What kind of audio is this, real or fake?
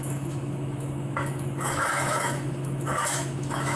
fake